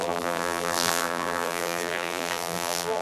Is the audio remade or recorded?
remade